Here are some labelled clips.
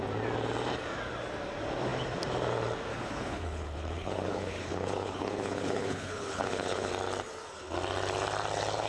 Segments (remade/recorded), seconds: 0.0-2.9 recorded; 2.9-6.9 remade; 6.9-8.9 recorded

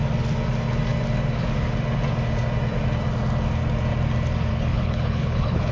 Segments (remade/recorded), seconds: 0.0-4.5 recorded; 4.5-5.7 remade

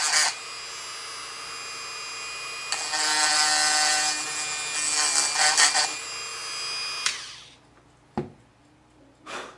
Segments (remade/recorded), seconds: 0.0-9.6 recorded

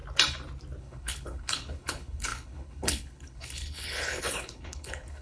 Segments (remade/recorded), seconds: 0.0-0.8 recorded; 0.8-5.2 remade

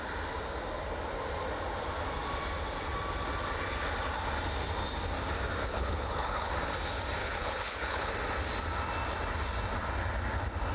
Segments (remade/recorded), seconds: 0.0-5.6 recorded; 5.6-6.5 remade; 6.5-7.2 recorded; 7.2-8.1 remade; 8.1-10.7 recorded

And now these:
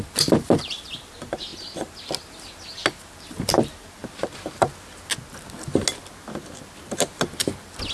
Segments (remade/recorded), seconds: 0.0-7.9 recorded